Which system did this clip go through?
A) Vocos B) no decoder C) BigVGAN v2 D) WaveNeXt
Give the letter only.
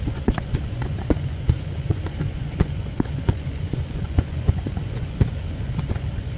A